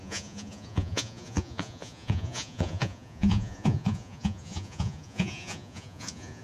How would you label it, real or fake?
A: fake